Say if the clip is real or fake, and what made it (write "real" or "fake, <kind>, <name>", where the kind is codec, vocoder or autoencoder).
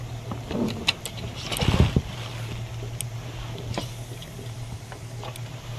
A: real